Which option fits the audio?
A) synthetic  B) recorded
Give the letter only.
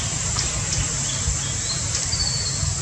B